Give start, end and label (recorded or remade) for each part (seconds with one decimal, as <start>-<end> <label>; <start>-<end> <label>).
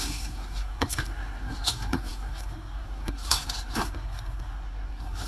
0.0-5.3 remade